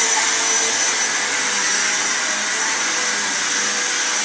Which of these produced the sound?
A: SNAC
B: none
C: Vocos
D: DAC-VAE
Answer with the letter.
B